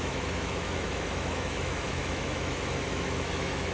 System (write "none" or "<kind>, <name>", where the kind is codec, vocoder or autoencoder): autoencoder, DAC-VAE